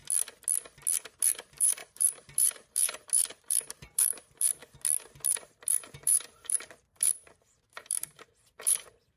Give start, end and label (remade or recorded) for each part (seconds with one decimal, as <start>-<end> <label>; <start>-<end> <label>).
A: 0.0-1.2 recorded; 1.2-4.6 remade; 4.6-5.3 recorded; 5.3-9.2 remade